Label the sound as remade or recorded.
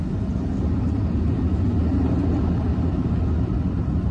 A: recorded